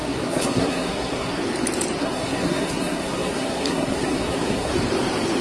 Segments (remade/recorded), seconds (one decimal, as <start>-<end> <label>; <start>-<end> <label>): 0.0-1.4 remade; 1.4-2.0 recorded; 2.0-4.7 remade; 4.7-5.4 recorded